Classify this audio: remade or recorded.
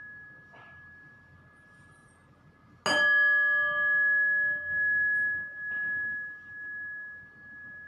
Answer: recorded